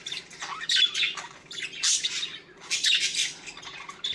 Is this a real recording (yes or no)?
yes